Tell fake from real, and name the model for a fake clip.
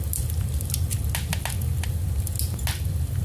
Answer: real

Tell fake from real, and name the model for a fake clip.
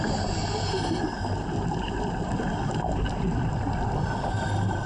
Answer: real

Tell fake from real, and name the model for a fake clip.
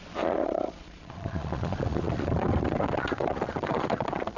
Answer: fake, vocoder, Vocos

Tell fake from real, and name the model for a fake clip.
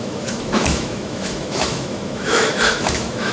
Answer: fake, autoencoder, DAC-VAE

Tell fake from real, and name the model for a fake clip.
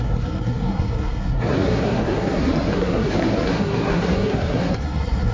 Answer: fake, codec, SNAC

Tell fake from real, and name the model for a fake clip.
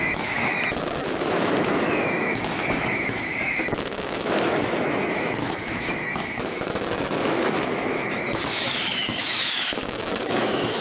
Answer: fake, autoencoder, DAC-VAE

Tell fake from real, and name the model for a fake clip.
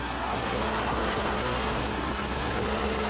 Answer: fake, codec, SNAC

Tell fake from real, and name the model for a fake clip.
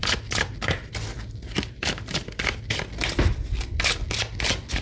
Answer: real